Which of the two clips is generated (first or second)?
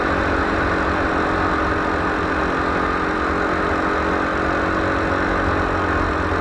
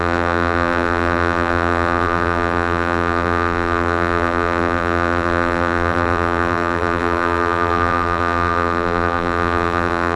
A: second